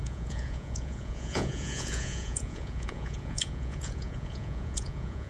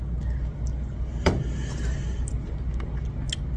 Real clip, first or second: second